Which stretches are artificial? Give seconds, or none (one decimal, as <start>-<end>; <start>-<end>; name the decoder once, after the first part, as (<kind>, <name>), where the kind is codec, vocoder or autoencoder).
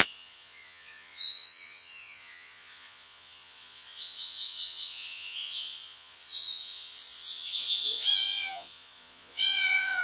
0.0-10.0 (vocoder, Vocos)